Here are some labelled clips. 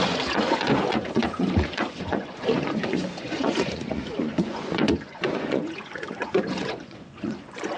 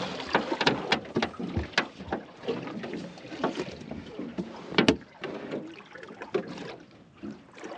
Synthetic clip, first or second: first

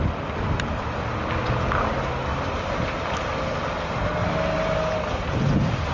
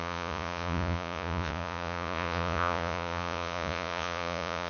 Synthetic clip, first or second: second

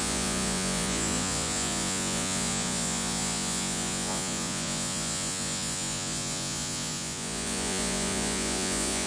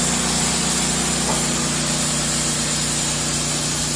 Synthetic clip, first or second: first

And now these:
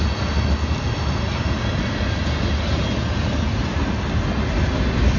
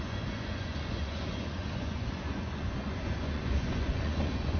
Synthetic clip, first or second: second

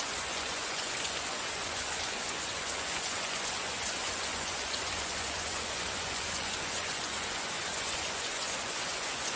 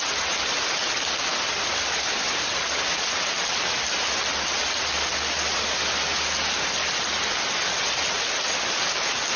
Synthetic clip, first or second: first